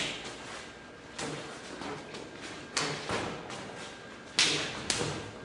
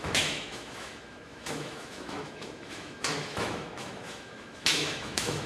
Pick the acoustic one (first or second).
first